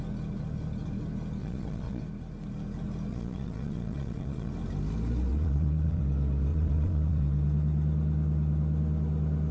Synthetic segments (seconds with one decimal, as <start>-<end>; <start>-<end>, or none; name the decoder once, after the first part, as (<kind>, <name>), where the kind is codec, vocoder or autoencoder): 1.4-2.0 (vocoder, Vocos); 3.1-4.5; 5.3-6.0; 6.5-7.2